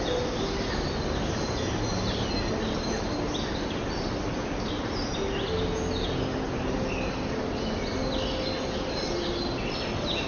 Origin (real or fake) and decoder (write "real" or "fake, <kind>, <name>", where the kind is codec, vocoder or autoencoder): real